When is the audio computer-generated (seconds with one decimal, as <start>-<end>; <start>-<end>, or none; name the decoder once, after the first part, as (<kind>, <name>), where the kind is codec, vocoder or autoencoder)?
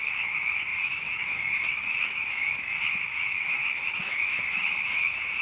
0.0-5.4 (autoencoder, DAC-VAE)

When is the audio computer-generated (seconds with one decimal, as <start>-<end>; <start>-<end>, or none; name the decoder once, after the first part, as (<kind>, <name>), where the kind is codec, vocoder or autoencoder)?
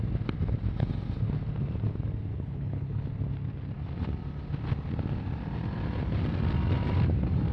2.3-3.1 (codec, HILCodec)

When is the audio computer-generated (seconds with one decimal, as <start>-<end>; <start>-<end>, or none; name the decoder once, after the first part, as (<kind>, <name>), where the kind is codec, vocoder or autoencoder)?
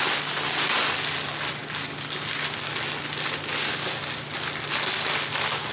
none